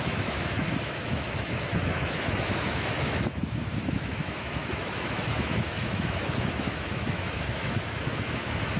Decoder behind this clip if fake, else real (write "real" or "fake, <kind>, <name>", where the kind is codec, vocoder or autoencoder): fake, autoencoder, DAC-VAE